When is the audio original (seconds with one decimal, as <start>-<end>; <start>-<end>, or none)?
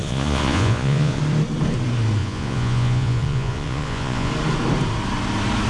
1.2-2.2; 4.3-5.7